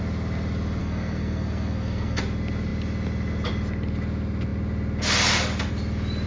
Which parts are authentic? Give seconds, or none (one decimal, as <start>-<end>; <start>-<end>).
0.0-0.8; 2.2-6.3